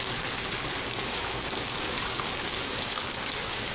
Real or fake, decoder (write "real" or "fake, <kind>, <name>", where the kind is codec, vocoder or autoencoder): fake, codec, DAC